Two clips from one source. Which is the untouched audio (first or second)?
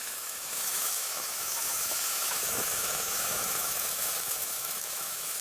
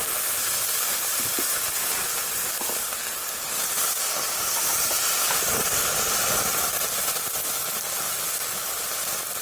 second